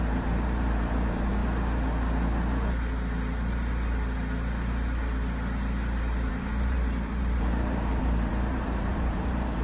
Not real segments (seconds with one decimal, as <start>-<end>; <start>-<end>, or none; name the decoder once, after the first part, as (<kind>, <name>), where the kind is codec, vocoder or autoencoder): 0.0-1.4 (vocoder, BigVGAN v2); 6.3-9.6